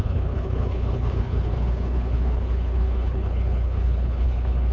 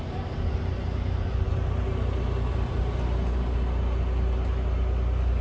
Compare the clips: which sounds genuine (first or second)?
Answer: second